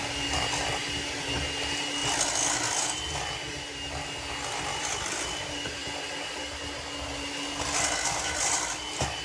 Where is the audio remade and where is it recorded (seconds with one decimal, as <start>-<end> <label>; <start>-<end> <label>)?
0.0-9.2 recorded